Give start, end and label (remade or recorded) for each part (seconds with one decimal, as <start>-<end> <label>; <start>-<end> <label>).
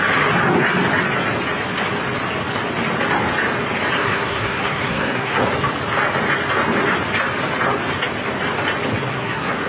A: 0.0-4.0 recorded; 4.0-5.4 remade; 5.4-9.1 recorded; 9.1-9.7 remade